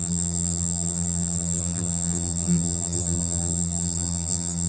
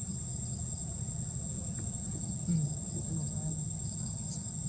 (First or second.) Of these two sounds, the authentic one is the second